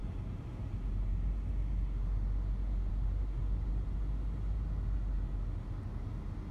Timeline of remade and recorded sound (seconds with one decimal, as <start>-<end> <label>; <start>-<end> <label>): 0.0-6.5 recorded